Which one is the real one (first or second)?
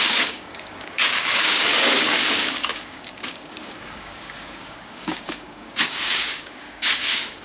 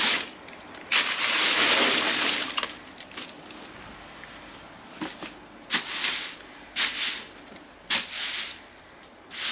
second